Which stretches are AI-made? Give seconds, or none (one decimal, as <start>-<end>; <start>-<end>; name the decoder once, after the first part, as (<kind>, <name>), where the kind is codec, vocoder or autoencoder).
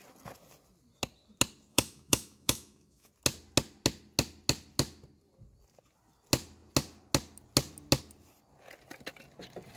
1.7-3.1 (autoencoder, DAC-VAE)